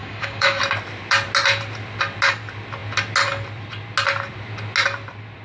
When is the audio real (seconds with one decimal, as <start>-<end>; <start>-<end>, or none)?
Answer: 0.6-5.4